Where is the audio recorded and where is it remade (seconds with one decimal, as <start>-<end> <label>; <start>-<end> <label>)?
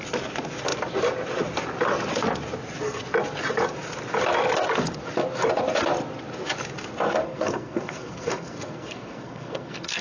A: 0.0-7.2 recorded; 7.2-10.0 remade